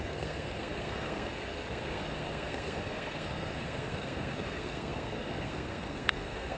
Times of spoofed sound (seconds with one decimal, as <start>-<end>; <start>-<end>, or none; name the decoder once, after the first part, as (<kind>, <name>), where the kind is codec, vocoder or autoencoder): 0.0-6.6 (codec, SNAC)

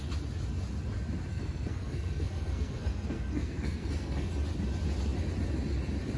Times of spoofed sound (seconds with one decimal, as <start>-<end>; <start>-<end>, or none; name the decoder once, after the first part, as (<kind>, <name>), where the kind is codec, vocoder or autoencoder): 1.3-4.3 (codec, SNAC)

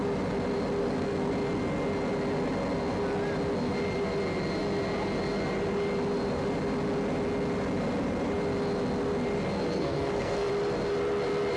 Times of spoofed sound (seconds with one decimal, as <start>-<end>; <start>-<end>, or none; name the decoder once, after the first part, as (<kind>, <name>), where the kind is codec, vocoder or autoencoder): 0.8-1.3 (codec, SNAC); 9.7-10.5

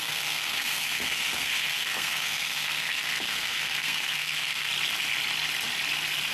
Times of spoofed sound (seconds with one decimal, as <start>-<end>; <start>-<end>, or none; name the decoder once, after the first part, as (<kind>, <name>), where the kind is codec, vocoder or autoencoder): 0.0-4.7 (codec, SNAC)

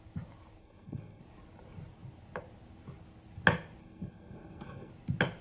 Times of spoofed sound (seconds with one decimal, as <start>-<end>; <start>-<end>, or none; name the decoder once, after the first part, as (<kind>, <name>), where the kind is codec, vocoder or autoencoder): 0.6-1.2 (codec, SNAC); 3.8-4.9